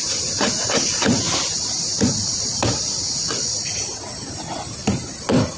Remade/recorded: recorded